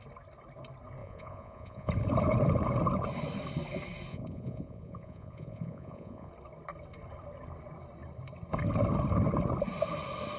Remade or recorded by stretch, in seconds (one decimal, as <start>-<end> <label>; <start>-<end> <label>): 0.0-1.0 recorded; 1.0-1.9 remade; 1.9-4.1 recorded; 4.1-6.3 remade; 6.3-10.4 recorded